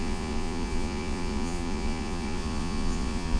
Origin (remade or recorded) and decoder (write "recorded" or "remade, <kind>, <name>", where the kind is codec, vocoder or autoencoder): remade, vocoder, Vocos